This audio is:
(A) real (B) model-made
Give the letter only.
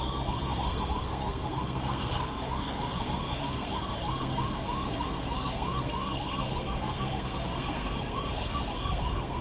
B